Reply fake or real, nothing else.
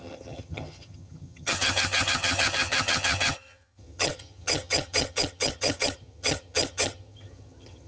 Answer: fake